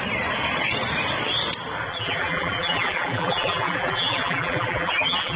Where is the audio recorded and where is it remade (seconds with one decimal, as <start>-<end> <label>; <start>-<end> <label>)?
0.0-1.9 recorded; 1.9-5.4 remade